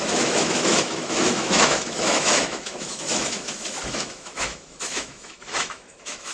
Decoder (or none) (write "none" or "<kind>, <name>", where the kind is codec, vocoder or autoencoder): autoencoder, DAC-VAE